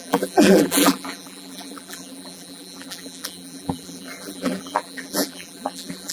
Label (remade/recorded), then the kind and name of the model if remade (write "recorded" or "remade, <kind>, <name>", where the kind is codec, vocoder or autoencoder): remade, vocoder, BigVGAN v2